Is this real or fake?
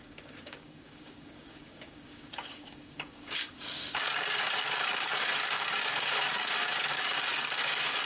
fake